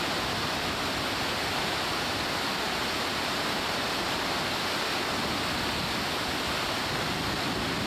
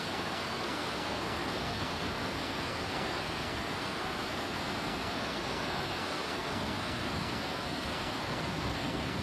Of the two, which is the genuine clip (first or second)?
first